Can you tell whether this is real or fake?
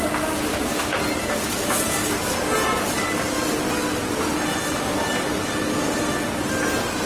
real